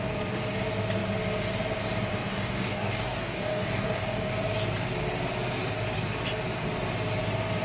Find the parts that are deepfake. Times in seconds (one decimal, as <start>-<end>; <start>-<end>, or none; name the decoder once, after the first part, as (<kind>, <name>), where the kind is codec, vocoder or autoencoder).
2.3-4.3 (codec, DAC)